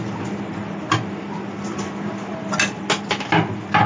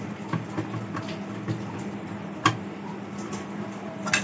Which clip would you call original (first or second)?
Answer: first